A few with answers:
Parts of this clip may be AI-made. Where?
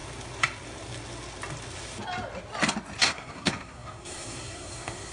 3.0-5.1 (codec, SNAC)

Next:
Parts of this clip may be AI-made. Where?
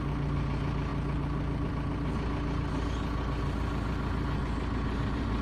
none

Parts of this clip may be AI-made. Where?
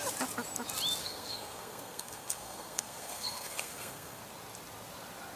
1.0-4.2 (codec, SNAC)